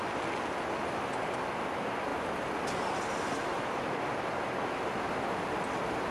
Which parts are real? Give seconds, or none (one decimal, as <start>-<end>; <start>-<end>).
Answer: 0.0-6.1

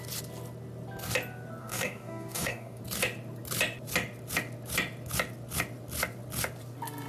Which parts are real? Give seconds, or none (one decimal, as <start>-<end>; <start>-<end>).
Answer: 0.0-1.6; 2.8-7.1

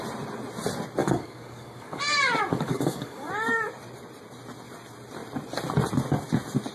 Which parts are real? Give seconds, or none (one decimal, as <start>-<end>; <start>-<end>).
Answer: 0.0-1.0; 2.0-2.5; 3.3-6.7

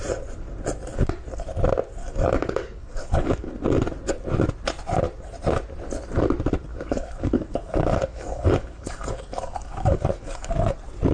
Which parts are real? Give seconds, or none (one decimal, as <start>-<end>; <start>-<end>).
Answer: 0.0-2.0; 3.5-6.7; 10.5-11.1

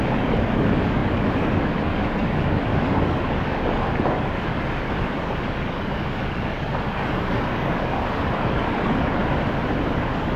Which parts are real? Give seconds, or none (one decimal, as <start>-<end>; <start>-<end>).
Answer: 9.2-9.9

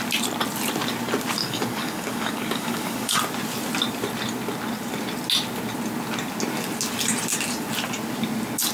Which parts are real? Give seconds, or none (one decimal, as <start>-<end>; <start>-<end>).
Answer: 0.0-1.4; 3.2-8.7

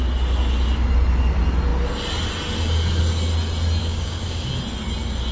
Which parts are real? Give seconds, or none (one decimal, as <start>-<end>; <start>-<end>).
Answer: 0.0-3.8; 4.5-5.3